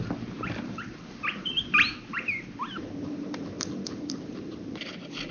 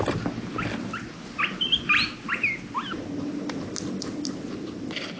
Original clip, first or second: second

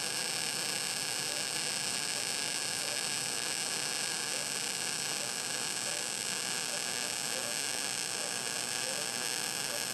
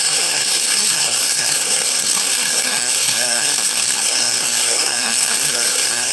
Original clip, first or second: first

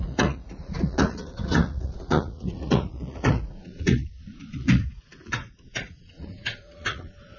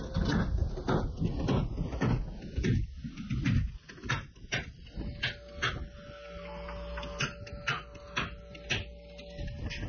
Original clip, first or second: second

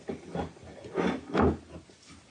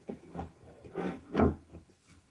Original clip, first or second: first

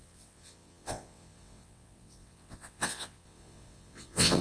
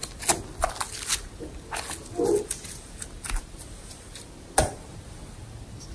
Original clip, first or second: second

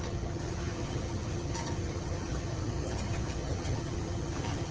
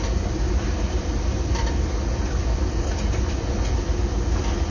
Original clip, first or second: second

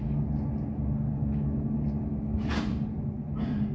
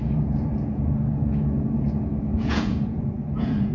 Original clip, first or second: first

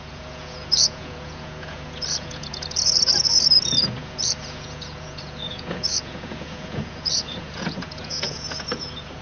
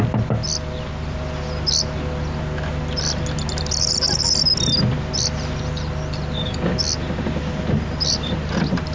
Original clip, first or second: second